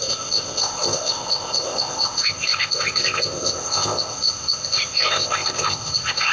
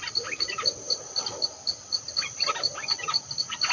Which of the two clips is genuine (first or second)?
second